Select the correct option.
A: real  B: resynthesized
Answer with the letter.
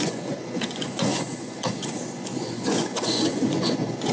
B